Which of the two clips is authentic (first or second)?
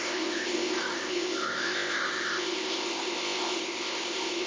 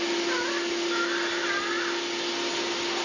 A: second